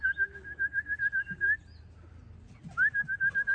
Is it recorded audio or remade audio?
recorded